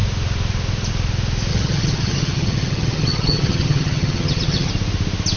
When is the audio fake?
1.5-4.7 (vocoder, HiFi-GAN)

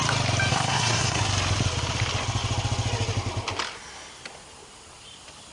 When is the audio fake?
0.5-1.2 (codec, SNAC)

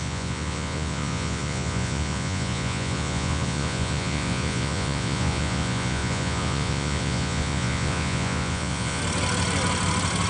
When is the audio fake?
0.0-9.0 (vocoder, Vocos)

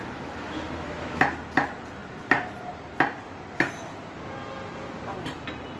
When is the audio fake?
0.0-1.2 (autoencoder, DAC-VAE)

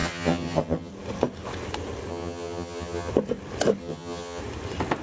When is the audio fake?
0.0-0.9 (vocoder, HiFi-GAN); 2.1-3.1; 3.8-4.4

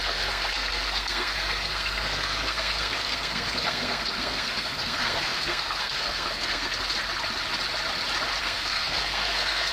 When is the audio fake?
0.0-6.7 (codec, SNAC); 8.4-9.7